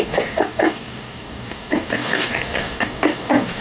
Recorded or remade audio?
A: remade